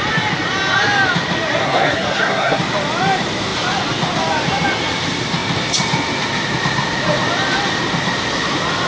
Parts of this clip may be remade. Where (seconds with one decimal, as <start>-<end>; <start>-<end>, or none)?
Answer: 1.6-2.6